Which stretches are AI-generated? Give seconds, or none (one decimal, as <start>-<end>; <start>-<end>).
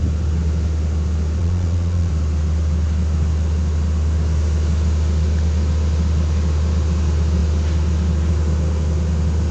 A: 1.4-2.1